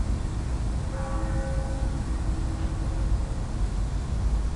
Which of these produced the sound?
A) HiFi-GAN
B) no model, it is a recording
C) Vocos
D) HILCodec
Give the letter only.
B